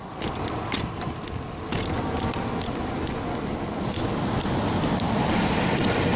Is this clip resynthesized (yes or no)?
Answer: no